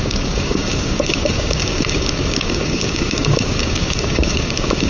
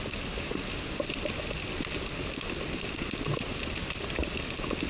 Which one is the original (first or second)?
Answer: second